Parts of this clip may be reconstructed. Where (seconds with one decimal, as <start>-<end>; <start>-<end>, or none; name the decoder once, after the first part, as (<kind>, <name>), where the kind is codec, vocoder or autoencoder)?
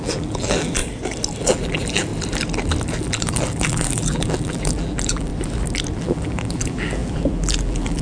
0.0-0.8 (vocoder, BigVGAN v2); 1.4-2.1; 2.9-5.3; 6.0-8.0